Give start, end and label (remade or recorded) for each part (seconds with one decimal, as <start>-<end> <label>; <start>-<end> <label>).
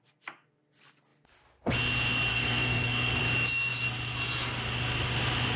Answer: 0.0-2.3 recorded; 2.3-3.2 remade; 3.2-5.6 recorded